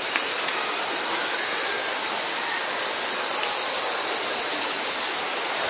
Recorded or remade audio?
recorded